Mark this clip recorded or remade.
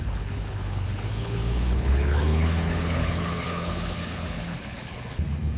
remade